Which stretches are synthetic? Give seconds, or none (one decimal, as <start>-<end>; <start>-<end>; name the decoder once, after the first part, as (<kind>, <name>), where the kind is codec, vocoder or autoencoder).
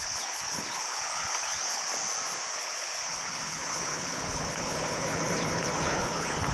0.0-1.9 (codec, HILCodec); 2.5-6.5